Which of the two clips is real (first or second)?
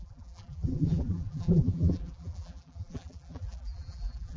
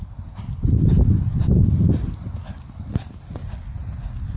second